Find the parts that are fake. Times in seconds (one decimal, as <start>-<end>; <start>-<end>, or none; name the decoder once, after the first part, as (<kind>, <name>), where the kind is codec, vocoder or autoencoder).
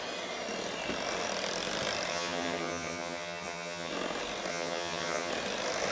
2.1-3.9 (vocoder, HiFi-GAN); 4.5-5.3